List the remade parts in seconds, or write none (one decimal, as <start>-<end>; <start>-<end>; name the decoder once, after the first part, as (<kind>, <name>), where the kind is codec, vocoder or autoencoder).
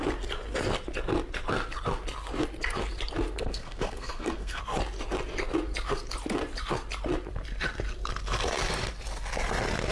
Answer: 3.4-4.6 (codec, SNAC)